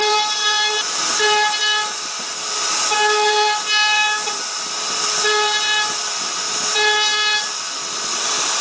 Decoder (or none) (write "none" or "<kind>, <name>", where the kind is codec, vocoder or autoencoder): vocoder, BigVGAN v2